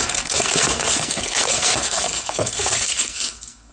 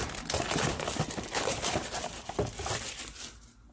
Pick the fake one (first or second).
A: first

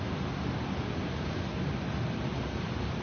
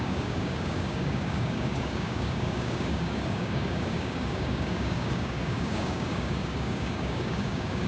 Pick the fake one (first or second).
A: second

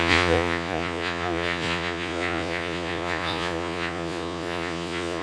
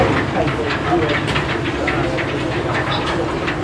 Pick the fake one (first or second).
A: first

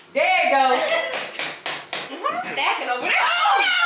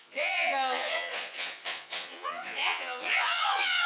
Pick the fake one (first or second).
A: second